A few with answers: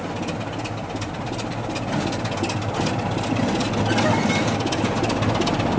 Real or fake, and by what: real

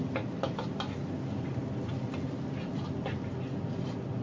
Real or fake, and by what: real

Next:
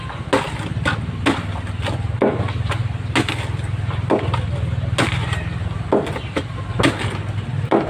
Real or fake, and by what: real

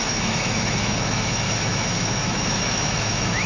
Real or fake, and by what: fake, autoencoder, DAC-VAE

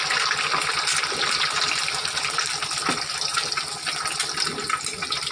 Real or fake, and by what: real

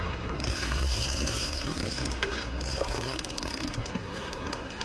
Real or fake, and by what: fake, codec, SNAC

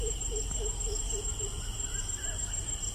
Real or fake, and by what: fake, vocoder, BigVGAN v2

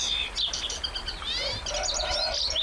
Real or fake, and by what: real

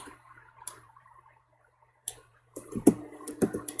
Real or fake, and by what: fake, vocoder, BigVGAN v2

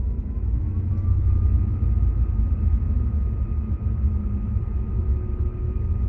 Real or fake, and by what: fake, autoencoder, DAC-VAE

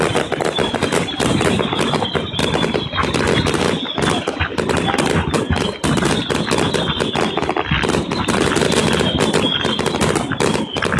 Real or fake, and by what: real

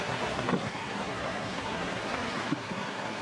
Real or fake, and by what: fake, codec, SNAC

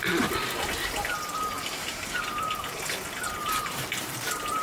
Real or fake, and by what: real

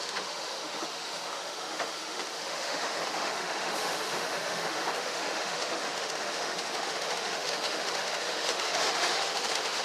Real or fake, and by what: fake, autoencoder, DAC-VAE